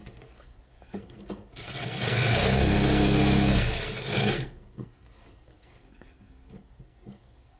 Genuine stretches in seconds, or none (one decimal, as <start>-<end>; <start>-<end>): none